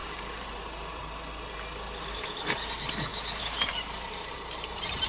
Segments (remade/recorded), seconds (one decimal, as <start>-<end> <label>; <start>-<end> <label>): 0.0-1.0 remade; 1.0-2.4 recorded; 2.4-3.1 remade; 3.1-3.7 recorded; 3.7-5.1 remade

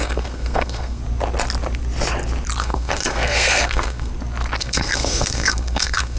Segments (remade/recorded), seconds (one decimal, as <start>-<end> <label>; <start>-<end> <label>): 0.0-1.0 remade; 1.0-2.6 recorded; 2.6-4.1 remade; 4.1-4.6 recorded; 4.6-6.2 remade

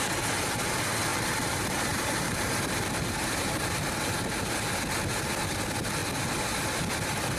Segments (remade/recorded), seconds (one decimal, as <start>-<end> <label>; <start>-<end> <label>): 0.0-1.1 recorded; 1.1-3.7 remade; 3.7-7.4 recorded